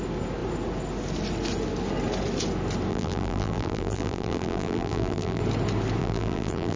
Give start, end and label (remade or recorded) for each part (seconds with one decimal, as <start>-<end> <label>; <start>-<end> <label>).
0.0-2.9 recorded; 2.9-5.4 remade; 5.4-6.0 recorded; 6.0-6.8 remade